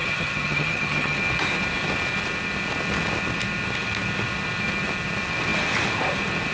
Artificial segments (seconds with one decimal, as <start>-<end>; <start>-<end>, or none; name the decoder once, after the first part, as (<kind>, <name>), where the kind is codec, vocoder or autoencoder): 0.0-1.2 (vocoder, HiFi-GAN)